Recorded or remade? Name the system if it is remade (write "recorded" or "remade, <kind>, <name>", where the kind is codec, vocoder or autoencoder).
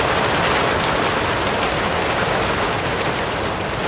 recorded